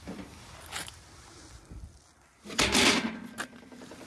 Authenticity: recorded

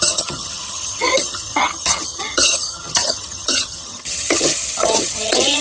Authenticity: remade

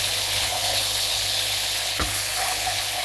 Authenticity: remade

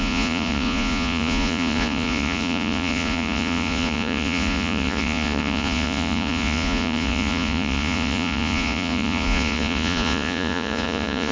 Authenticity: remade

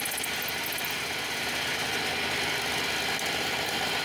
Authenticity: recorded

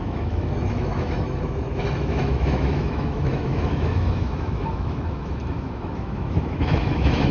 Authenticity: remade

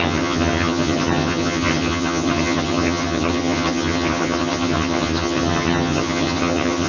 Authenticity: remade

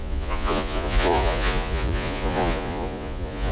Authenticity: remade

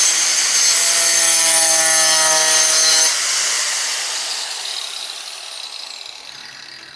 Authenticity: recorded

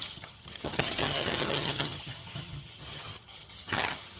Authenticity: remade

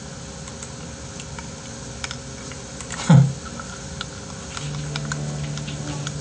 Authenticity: recorded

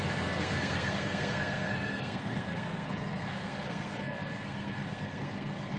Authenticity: remade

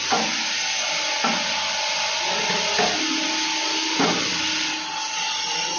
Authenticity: recorded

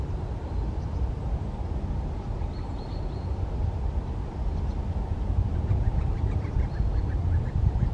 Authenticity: recorded